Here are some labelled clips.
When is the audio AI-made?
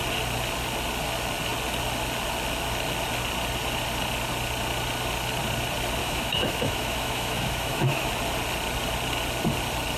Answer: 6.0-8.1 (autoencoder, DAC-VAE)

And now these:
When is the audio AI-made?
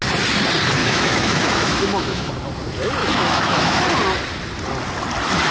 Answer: 0.8-2.3 (autoencoder, DAC-VAE); 3.0-3.8